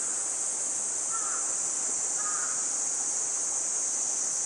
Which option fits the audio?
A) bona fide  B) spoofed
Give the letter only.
A